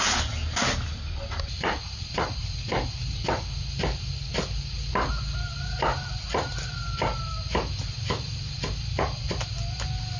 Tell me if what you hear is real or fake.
real